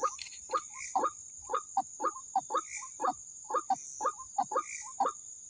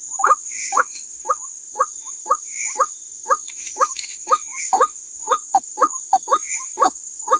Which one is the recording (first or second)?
first